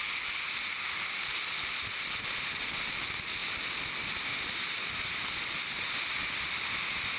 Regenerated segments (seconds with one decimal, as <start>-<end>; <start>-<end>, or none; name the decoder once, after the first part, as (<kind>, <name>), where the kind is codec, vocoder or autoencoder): none

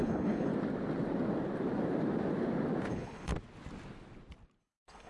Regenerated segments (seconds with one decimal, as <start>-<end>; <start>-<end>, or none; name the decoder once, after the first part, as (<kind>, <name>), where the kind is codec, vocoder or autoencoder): 0.0-0.5 (codec, HILCodec); 2.9-3.3; 4.6-5.1

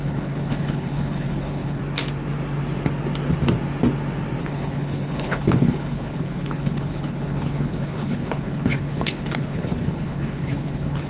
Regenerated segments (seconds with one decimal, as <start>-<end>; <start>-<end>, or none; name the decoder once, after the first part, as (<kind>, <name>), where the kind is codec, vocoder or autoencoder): 0.0-1.8 (codec, HILCodec); 4.4-11.1

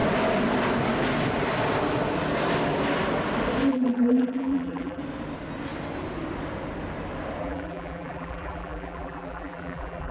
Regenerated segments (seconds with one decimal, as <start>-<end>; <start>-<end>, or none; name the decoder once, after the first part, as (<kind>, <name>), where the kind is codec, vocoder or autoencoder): 3.7-5.0 (vocoder, BigVGAN v2); 7.4-10.1

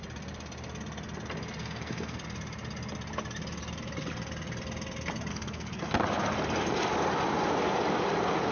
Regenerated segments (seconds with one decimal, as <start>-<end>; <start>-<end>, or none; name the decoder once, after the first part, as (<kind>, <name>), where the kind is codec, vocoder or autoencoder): 1.6-2.2 (codec, SNAC); 5.3-5.9

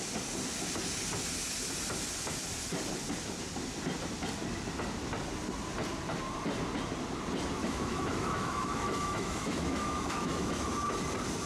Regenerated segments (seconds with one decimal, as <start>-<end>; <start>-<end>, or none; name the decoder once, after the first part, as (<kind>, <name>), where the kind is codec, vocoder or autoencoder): 7.6-10.7 (autoencoder, DAC-VAE)

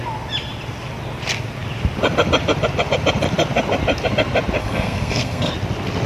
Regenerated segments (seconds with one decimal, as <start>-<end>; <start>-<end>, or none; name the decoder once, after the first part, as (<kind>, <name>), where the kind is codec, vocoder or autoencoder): 4.6-5.5 (codec, SNAC)